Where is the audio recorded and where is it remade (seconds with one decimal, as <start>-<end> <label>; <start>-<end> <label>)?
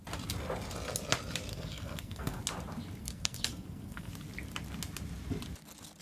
0.0-1.5 recorded; 1.5-2.4 remade; 2.4-3.0 recorded; 3.0-4.1 remade; 4.1-6.0 recorded